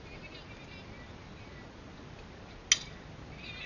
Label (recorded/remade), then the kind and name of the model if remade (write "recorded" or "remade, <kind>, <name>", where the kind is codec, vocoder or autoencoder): recorded